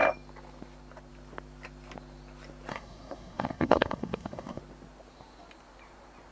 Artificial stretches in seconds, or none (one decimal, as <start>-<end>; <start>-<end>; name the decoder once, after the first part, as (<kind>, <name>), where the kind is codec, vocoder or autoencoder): 2.7-4.6 (codec, SNAC)